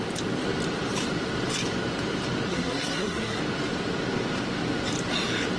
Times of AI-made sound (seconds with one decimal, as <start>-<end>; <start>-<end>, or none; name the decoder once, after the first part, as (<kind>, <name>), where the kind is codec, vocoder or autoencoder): 2.5-3.4 (codec, SNAC)